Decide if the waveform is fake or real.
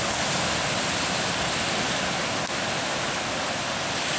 real